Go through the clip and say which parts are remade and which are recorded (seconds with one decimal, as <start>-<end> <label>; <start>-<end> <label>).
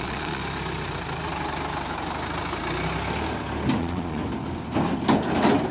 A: 0.0-0.4 remade; 0.4-3.8 recorded; 3.8-4.2 remade; 4.2-5.7 recorded